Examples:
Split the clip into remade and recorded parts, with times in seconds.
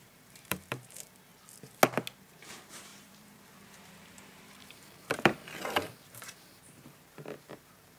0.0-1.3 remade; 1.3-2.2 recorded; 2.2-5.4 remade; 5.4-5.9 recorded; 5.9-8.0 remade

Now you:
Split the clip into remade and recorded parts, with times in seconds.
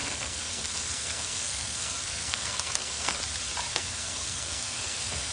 0.0-3.2 remade; 3.2-3.7 recorded; 3.7-5.3 remade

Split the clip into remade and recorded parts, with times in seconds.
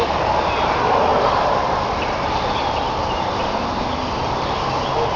0.0-5.2 recorded